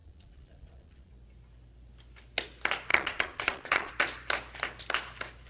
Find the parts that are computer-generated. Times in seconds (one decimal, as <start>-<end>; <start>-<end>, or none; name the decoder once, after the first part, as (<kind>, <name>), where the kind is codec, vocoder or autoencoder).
0.0-1.1 (vocoder, Vocos); 2.9-3.9